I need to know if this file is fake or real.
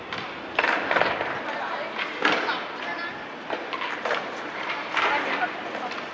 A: real